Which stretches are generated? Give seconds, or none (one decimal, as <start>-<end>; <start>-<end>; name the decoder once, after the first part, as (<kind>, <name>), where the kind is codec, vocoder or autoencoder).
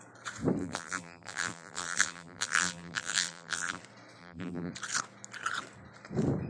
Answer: 0.6-3.8 (vocoder, BigVGAN v2); 4.2-4.7